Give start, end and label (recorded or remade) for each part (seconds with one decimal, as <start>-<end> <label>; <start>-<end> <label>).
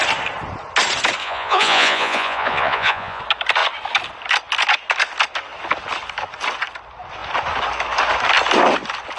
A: 0.0-1.2 recorded; 1.2-3.2 remade; 3.2-9.2 recorded